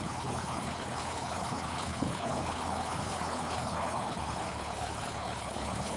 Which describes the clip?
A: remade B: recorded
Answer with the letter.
A